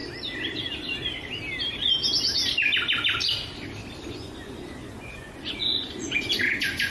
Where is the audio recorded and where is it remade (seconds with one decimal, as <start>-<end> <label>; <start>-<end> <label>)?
0.0-4.1 recorded; 4.1-6.9 remade

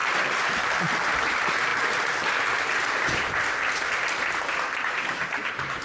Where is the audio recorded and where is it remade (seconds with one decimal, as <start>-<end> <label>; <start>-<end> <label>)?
0.0-5.8 recorded

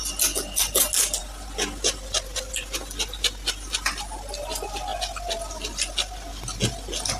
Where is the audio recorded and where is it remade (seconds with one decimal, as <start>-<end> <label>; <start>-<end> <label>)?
0.0-7.2 recorded

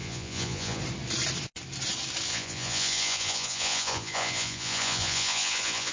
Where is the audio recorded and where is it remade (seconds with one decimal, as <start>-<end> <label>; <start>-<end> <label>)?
0.0-0.8 remade; 0.8-2.3 recorded; 2.3-5.9 remade

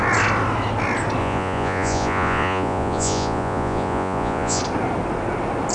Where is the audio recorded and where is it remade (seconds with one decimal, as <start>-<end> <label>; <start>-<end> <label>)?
0.0-1.2 recorded; 1.2-4.6 remade; 4.6-5.7 recorded

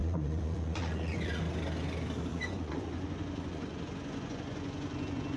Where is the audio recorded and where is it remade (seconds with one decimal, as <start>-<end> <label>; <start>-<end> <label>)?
0.0-1.4 remade; 1.4-2.3 recorded; 2.3-5.4 remade

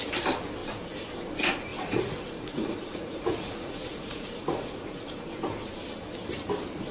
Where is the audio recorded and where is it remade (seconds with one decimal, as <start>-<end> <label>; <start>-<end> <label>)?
0.0-1.7 recorded; 1.7-5.7 remade; 5.7-6.9 recorded